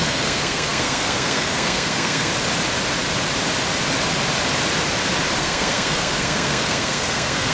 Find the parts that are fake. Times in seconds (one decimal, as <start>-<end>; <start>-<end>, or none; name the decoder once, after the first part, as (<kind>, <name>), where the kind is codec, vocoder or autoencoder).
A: 0.0-2.3 (codec, SNAC); 5.4-7.5